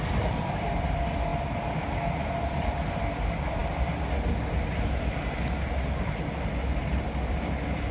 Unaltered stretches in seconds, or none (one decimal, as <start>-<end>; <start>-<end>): 0.0-7.9